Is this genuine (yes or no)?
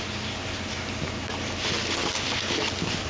yes